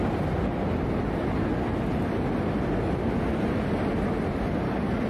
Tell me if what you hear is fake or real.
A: real